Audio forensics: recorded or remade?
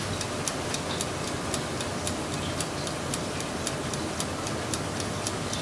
recorded